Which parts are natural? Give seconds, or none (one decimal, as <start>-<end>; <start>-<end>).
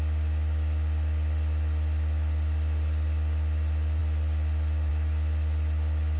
0.0-6.2